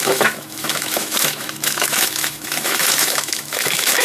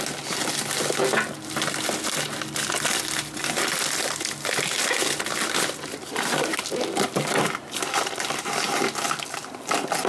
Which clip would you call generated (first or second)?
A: first